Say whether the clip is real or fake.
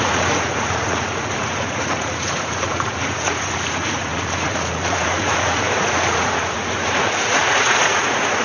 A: fake